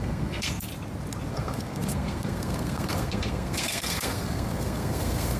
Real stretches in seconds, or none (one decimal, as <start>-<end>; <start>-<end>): 0.7-1.3